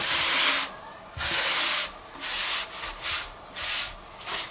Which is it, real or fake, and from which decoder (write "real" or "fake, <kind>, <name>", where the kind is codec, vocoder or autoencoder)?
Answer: real